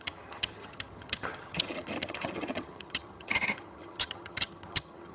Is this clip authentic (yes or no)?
no